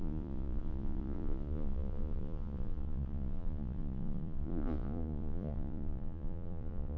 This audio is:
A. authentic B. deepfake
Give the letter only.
B